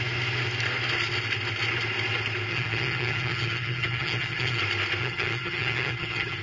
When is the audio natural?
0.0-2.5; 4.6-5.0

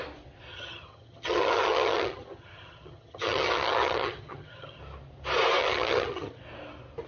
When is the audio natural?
0.0-0.5; 4.8-5.6; 6.4-7.1

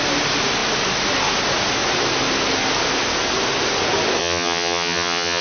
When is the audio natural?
0.0-4.2

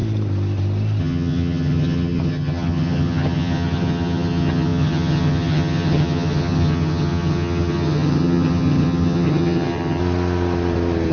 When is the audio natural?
0.0-1.0; 10.0-11.1

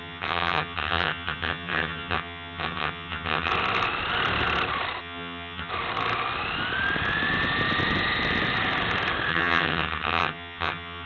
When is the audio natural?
3.5-5.0; 5.7-9.3

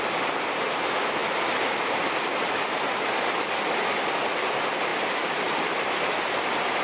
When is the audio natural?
0.0-6.8

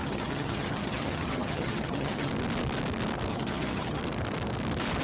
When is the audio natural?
2.3-3.3; 4.0-5.0